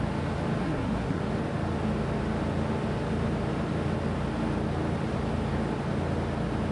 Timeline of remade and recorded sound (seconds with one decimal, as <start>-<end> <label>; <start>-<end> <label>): 0.0-0.6 recorded; 0.6-1.2 remade; 1.2-6.7 recorded